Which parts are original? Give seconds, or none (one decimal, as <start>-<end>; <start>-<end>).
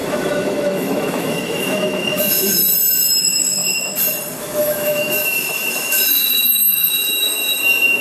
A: 2.6-3.2; 3.6-4.4